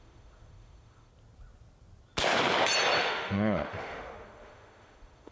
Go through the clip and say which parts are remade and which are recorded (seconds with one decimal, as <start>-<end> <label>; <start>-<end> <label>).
0.0-1.1 remade; 1.1-3.0 recorded; 3.0-5.3 remade